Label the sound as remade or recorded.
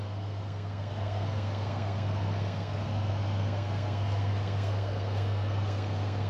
remade